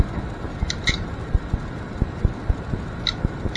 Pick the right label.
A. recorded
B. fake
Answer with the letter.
A